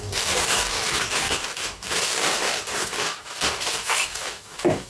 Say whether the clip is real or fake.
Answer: fake